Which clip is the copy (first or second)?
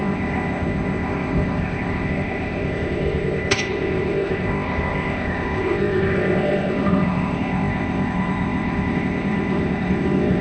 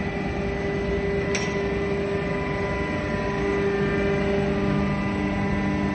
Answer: first